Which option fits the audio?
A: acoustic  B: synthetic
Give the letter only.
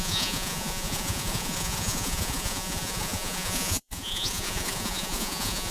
B